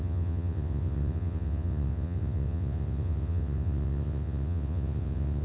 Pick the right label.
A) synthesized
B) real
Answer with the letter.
A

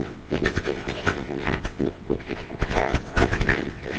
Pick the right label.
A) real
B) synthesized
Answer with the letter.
B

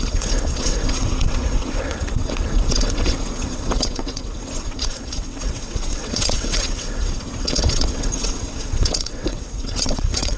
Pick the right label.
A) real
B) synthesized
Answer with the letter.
B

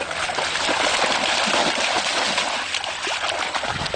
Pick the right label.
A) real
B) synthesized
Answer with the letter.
A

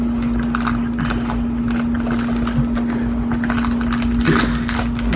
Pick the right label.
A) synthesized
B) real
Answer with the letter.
B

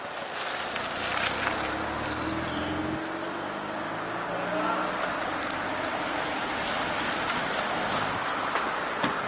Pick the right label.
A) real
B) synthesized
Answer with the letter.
A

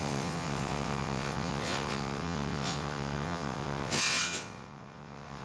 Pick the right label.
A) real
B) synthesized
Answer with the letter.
B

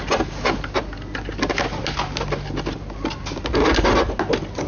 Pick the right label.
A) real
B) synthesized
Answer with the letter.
A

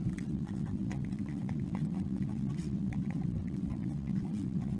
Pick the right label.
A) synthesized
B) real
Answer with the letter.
A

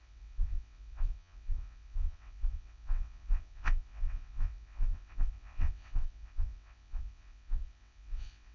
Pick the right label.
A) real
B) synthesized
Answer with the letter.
B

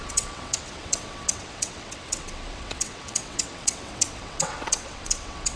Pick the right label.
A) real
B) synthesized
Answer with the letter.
B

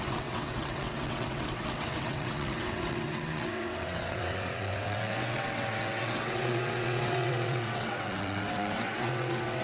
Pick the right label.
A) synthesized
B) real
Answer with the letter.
A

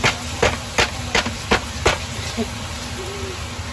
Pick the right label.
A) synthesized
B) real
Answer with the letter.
B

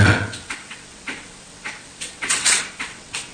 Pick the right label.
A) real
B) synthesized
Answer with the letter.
B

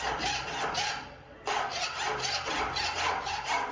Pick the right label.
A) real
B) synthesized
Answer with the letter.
A